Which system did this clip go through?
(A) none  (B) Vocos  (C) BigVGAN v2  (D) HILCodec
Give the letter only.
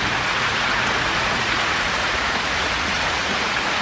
B